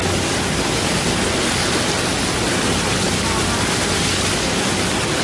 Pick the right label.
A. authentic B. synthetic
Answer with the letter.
A